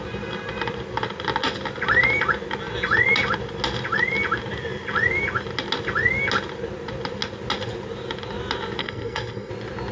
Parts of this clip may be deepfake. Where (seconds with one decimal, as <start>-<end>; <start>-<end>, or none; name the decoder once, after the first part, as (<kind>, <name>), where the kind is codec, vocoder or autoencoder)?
8.8-9.5 (codec, SNAC)